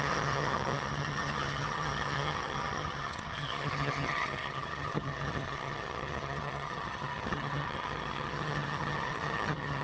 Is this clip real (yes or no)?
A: no